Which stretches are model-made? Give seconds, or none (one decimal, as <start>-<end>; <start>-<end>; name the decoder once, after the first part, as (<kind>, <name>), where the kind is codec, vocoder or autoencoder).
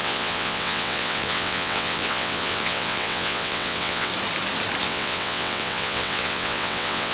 0.0-4.1 (vocoder, WaveNeXt); 4.8-7.1